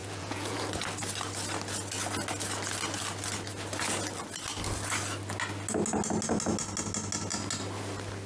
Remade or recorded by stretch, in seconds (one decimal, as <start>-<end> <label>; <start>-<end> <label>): 0.0-0.7 remade; 0.7-8.3 recorded